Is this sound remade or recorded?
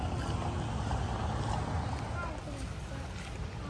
recorded